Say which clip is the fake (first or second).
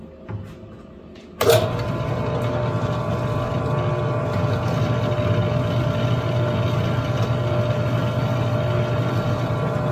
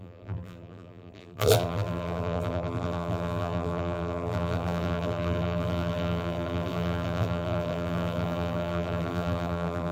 second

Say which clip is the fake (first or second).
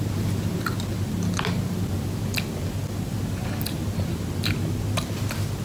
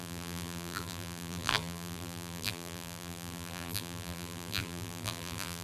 second